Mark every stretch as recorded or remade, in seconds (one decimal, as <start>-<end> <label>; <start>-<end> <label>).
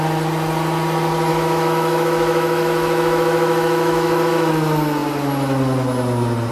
0.0-1.3 recorded; 1.3-4.5 remade; 4.5-6.5 recorded